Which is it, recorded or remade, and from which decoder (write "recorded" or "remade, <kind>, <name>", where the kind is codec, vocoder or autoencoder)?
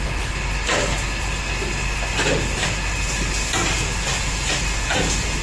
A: recorded